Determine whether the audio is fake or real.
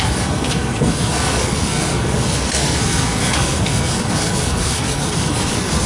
fake